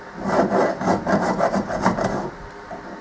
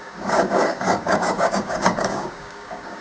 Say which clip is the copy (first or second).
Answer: second